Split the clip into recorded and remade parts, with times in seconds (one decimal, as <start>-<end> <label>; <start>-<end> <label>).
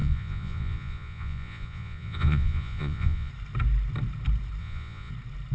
0.0-3.3 remade; 3.3-4.6 recorded; 4.6-5.1 remade; 5.1-5.5 recorded